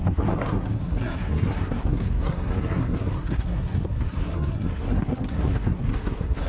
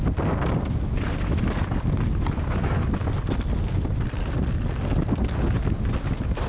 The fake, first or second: first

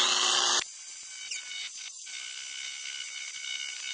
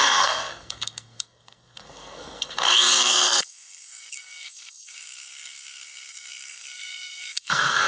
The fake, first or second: second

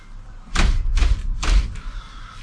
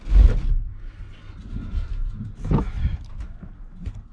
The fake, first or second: first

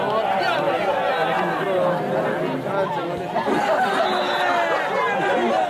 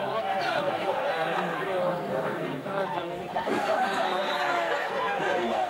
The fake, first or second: second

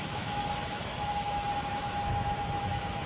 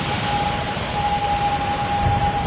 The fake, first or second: first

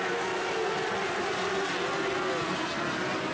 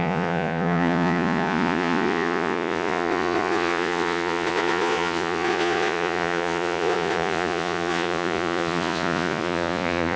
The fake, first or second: second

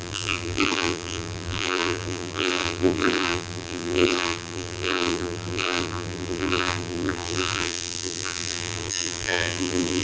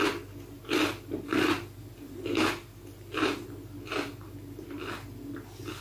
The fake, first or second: first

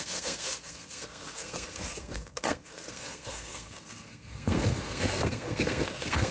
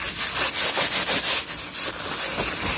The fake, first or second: first